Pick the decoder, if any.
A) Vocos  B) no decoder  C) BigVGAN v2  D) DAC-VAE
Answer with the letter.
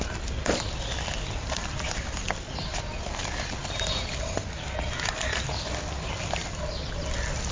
B